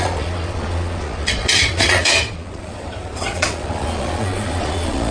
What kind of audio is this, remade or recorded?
remade